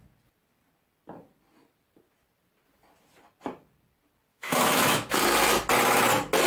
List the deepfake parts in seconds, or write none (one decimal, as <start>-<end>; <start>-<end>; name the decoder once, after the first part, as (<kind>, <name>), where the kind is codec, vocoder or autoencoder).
4.3-5.2 (autoencoder, DAC-VAE)